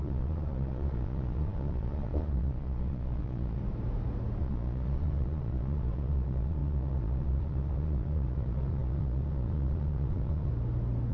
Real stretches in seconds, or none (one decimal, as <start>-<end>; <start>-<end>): 3.6-4.4; 10.5-11.1